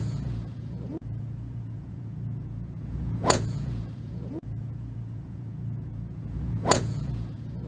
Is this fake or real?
fake